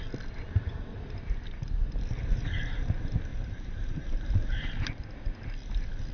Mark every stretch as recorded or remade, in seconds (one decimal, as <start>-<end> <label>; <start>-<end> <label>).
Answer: 0.0-1.8 recorded; 1.8-2.5 remade; 2.5-3.3 recorded; 3.3-4.9 remade; 4.9-6.1 recorded